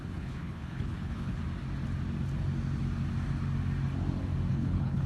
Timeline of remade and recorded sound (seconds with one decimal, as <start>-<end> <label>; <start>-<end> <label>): 0.0-1.4 remade; 1.4-4.5 recorded; 4.5-5.1 remade